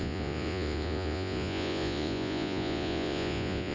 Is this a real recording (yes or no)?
no